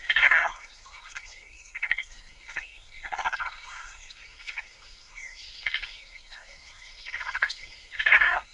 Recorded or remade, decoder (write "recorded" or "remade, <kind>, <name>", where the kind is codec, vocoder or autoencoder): remade, codec, SNAC